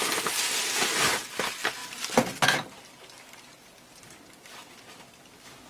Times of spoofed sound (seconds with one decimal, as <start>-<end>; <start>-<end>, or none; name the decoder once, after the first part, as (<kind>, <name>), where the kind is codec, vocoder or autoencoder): none